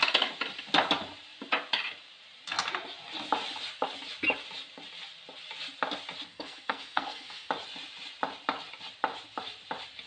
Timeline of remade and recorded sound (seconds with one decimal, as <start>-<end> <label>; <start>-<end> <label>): 0.0-6.3 recorded; 6.3-7.5 remade; 7.5-10.1 recorded